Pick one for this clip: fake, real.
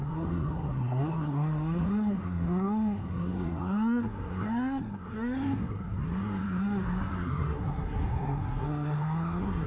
fake